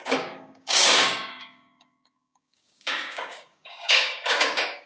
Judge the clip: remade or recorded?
remade